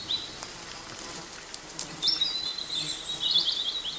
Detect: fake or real fake